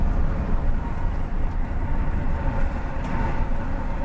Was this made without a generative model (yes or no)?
no